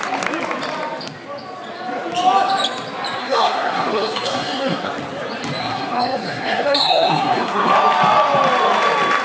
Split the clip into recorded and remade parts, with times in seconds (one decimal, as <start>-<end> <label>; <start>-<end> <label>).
0.0-3.2 recorded; 3.2-4.9 remade; 4.9-5.6 recorded; 5.6-7.7 remade; 7.7-9.2 recorded